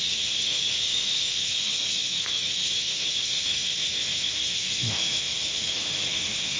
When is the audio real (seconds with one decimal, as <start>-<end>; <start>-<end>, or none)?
none